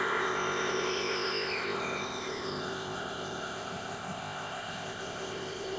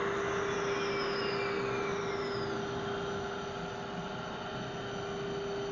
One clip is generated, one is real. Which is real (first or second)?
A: second